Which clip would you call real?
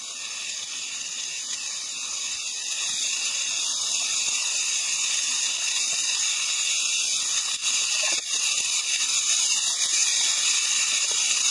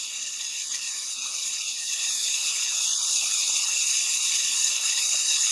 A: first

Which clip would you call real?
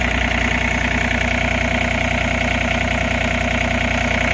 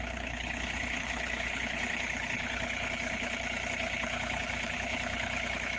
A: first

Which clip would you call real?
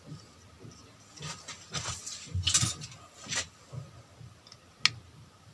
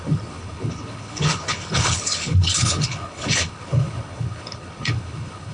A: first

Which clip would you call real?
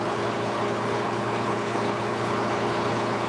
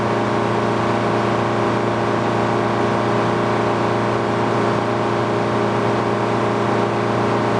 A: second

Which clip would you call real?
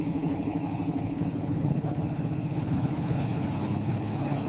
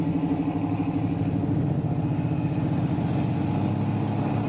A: second